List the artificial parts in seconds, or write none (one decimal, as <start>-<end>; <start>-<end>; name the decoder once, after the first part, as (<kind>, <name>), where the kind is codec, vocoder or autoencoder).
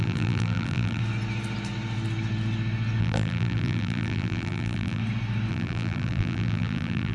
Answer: 0.0-1.0 (vocoder, BigVGAN v2); 3.0-5.0; 5.5-7.1